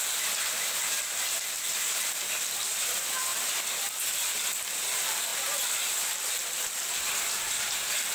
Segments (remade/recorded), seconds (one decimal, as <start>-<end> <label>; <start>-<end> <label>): 0.0-0.8 remade; 0.8-1.7 recorded; 1.7-3.3 remade; 3.3-4.7 recorded; 4.7-8.1 remade